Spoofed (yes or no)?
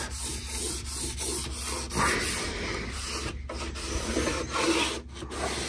no